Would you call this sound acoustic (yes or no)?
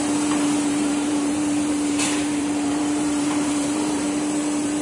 no